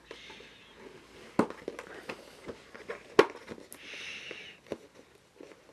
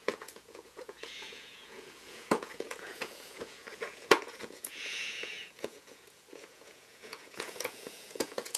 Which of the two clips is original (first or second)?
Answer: first